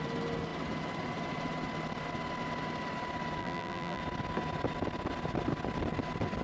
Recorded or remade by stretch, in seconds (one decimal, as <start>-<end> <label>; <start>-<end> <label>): 0.0-3.4 recorded; 3.4-4.0 remade; 4.0-6.4 recorded